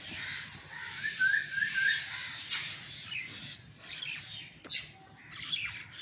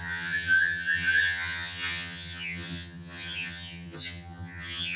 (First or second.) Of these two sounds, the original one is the first